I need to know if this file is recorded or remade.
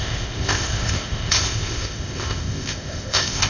remade